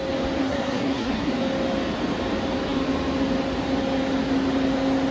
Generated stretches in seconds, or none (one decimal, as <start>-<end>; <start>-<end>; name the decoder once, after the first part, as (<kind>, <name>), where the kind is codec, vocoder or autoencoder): 0.4-1.3 (codec, SNAC)